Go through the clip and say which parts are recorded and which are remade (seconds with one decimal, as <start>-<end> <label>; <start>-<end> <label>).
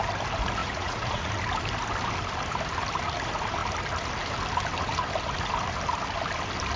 0.0-0.6 recorded; 0.6-1.3 remade; 1.3-6.8 recorded